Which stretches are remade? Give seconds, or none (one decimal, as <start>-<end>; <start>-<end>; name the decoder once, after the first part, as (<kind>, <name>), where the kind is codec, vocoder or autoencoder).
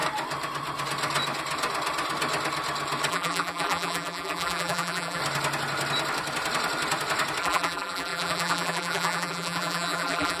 3.1-5.2 (vocoder, BigVGAN v2); 7.4-10.4